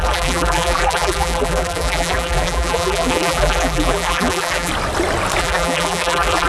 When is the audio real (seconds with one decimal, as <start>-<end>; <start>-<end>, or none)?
4.7-5.4